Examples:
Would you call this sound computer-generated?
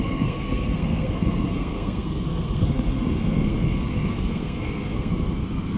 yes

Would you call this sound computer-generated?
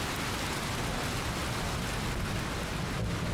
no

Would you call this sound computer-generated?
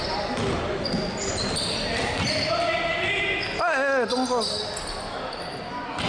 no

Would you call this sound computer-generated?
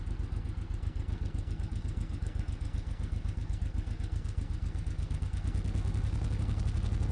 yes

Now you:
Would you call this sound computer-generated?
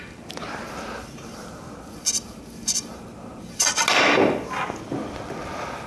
no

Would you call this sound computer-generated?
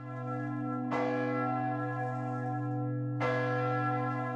no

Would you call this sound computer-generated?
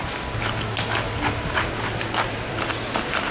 no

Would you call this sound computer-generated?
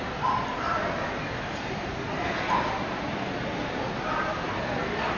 no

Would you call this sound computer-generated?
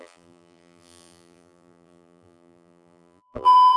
yes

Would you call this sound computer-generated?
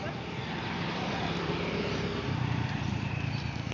no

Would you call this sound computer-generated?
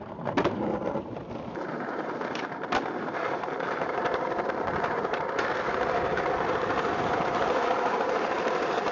yes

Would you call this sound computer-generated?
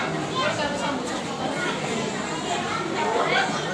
no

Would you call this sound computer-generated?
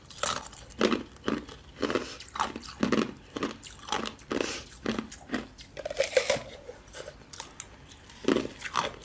no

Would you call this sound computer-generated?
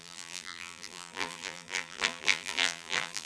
yes